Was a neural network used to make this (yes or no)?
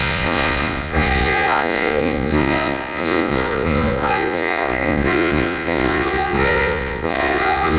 yes